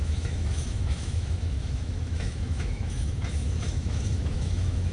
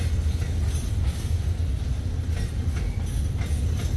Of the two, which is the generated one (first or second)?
first